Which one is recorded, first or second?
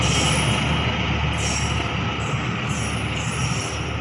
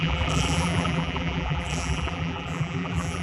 first